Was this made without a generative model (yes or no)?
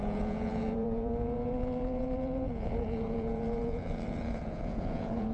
no